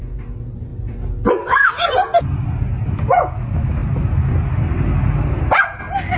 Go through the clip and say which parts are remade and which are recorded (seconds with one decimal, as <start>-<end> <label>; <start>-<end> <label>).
0.0-6.2 recorded